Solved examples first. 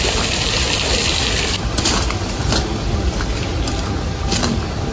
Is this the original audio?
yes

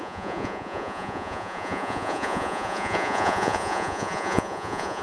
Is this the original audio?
no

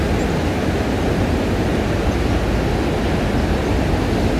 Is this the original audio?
yes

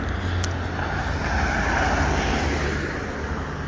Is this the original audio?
yes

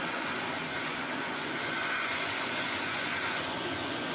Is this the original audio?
no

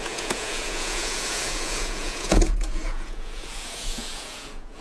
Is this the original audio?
no